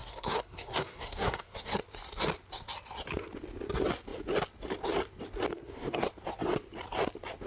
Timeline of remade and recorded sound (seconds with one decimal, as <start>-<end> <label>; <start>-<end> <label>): 0.0-1.8 remade; 1.8-5.5 recorded; 5.5-6.1 remade; 6.1-7.5 recorded